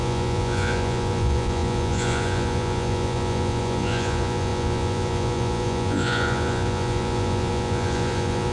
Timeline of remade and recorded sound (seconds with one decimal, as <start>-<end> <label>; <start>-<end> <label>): 0.0-8.5 remade